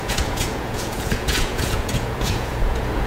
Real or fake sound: fake